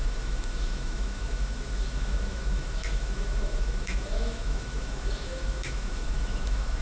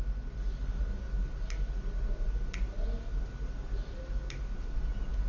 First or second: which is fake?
first